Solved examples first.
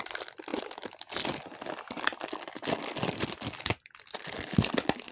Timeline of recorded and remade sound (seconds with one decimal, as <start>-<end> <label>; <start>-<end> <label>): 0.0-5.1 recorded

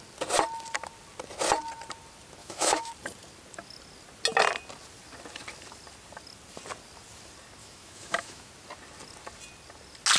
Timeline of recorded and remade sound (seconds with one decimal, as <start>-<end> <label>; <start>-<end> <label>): 0.0-2.4 recorded; 2.4-2.9 remade; 2.9-7.6 recorded; 7.6-8.5 remade; 8.5-10.2 recorded

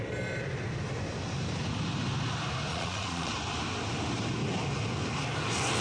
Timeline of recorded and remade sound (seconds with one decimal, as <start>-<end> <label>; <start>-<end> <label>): 0.0-2.7 recorded; 2.7-3.3 remade; 3.3-5.8 recorded